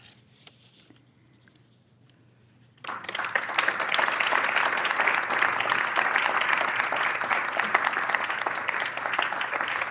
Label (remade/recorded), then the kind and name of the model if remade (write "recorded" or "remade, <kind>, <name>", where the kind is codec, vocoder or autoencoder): remade, vocoder, BigVGAN v2